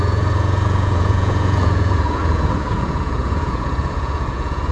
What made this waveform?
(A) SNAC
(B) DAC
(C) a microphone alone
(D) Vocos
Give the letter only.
D